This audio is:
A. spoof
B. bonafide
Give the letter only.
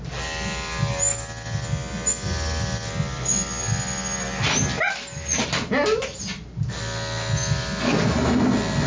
B